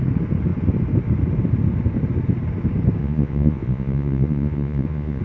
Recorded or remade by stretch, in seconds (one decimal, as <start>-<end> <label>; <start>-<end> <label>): 0.0-3.0 recorded; 3.0-5.2 remade